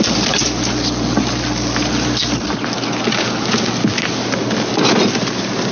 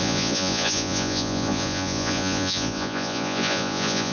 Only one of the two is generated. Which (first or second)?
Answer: second